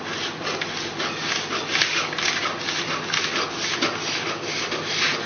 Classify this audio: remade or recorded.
recorded